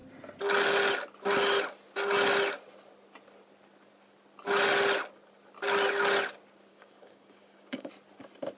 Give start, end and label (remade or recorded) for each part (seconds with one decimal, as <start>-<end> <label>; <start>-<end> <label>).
0.0-6.7 recorded; 6.7-7.9 remade; 7.9-8.6 recorded